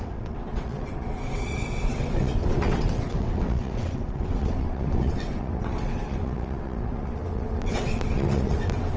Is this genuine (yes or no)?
no